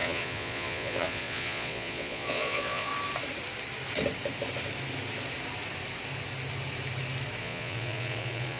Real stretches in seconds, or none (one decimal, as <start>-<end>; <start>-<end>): 2.9-7.4